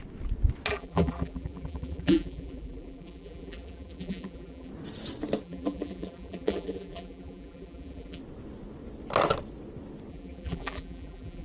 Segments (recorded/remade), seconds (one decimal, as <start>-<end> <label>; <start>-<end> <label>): 0.0-0.7 recorded; 0.7-4.7 remade; 4.7-5.4 recorded; 5.4-8.2 remade; 8.2-10.1 recorded; 10.1-11.4 remade

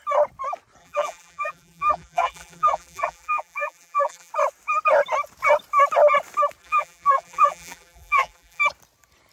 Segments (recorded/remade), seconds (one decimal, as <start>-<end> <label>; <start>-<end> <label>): 0.0-0.8 recorded; 0.8-4.3 remade; 4.3-6.6 recorded; 6.6-8.6 remade; 8.6-9.3 recorded